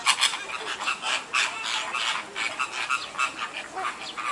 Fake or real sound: real